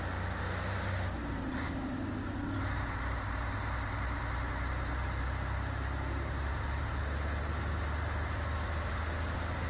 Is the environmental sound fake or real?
real